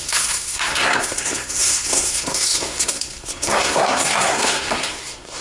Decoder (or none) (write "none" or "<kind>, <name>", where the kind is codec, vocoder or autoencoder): codec, SNAC